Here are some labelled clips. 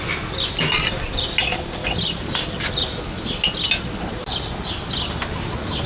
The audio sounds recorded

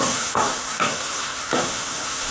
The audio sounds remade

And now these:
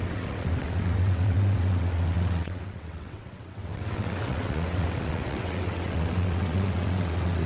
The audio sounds remade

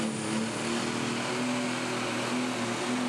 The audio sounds recorded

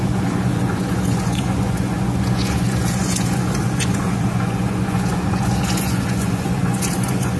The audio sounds remade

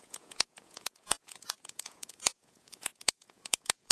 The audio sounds remade